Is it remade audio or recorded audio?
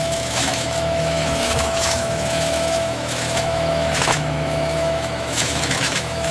remade